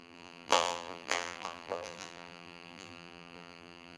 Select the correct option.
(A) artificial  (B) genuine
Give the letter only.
A